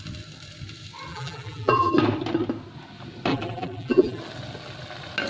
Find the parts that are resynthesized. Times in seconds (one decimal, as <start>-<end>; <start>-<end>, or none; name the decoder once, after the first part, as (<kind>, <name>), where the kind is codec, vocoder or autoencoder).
1.1-1.9 (vocoder, BigVGAN v2); 3.3-4.2